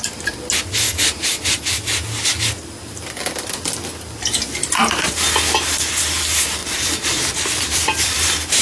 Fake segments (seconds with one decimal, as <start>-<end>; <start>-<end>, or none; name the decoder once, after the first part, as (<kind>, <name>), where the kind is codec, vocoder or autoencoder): 4.6-5.1 (vocoder, BigVGAN v2); 6.6-8.6